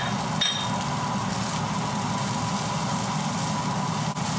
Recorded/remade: recorded